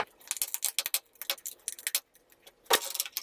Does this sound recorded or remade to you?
recorded